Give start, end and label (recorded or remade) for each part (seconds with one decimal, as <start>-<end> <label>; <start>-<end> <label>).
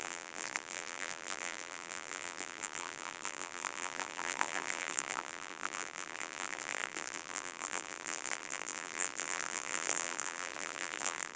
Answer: 0.0-11.4 remade